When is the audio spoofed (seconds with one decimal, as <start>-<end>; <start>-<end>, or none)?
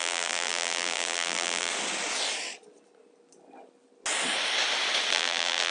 0.0-1.7; 5.1-5.7